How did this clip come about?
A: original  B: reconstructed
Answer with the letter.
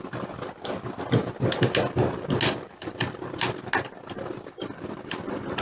A